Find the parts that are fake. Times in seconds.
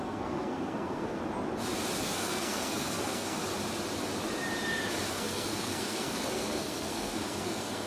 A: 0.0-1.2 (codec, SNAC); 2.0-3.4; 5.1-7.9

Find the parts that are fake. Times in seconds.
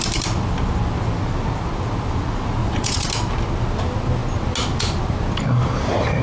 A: 2.6-3.1 (vocoder, Vocos)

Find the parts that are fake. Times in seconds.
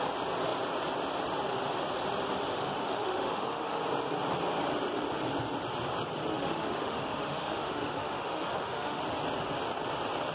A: 2.5-3.8 (autoencoder, DAC-VAE); 6.3-9.0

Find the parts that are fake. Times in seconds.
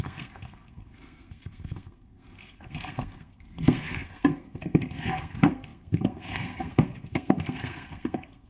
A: 0.0-8.5 (codec, SNAC)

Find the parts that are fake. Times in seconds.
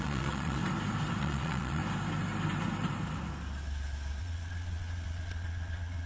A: 0.0-0.6 (vocoder, Vocos); 1.2-1.8; 4.2-6.1